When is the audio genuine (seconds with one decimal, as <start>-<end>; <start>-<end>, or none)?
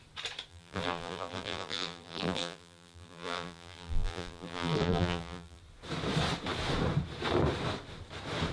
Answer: 0.0-0.5; 5.6-8.5